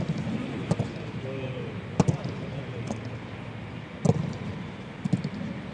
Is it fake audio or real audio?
real